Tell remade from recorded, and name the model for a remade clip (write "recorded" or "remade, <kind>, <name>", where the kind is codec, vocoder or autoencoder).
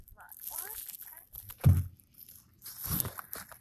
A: recorded